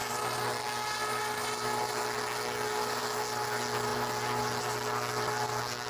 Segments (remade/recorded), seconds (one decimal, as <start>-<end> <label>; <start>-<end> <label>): 0.0-5.9 recorded